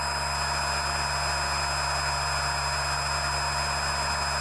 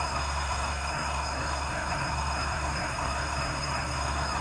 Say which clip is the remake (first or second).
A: second